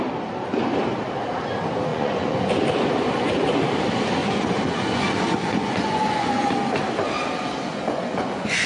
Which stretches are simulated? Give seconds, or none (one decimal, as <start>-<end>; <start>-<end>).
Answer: 1.9-2.5; 4.2-6.4; 7.7-8.7